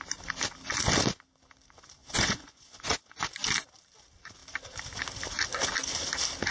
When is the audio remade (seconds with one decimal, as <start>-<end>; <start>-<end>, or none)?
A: 2.0-3.2